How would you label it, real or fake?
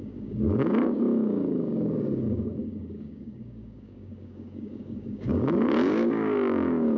fake